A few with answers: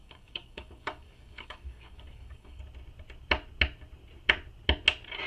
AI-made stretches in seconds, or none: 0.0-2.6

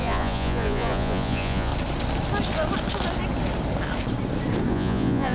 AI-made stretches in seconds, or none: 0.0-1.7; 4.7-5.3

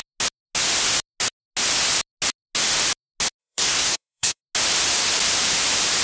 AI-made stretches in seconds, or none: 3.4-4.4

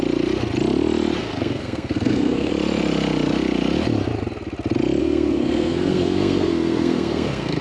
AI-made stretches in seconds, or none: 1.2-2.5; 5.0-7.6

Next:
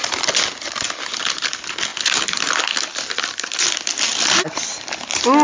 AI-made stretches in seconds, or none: none

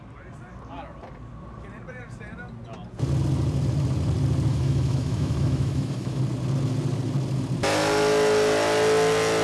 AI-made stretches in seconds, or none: 4.5-6.2

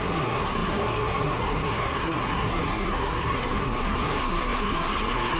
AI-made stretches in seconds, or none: 0.0-5.4